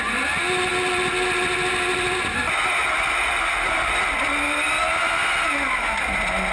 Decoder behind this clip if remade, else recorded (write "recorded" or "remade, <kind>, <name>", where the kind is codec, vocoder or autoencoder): recorded